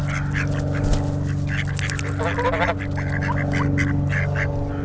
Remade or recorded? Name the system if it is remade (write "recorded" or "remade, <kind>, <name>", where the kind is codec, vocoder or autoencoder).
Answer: recorded